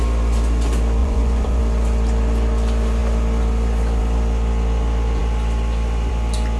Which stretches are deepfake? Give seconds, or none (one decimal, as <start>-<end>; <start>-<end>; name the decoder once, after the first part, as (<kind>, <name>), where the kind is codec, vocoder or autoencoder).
1.0-1.6 (vocoder, Vocos)